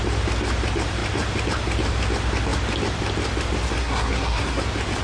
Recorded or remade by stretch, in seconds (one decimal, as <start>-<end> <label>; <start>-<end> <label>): 0.0-3.8 recorded; 3.8-4.6 remade; 4.6-5.0 recorded

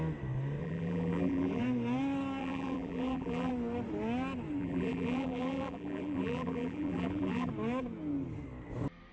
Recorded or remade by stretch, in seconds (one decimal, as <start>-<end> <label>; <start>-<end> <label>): 0.0-0.6 recorded; 0.6-1.6 remade; 1.6-2.4 recorded; 2.4-3.5 remade; 3.5-4.6 recorded; 4.6-7.5 remade; 7.5-9.1 recorded

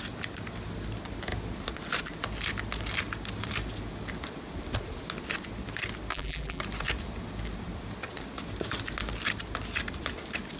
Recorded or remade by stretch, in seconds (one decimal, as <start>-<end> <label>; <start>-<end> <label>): 0.0-6.1 recorded; 6.1-6.6 remade; 6.6-10.6 recorded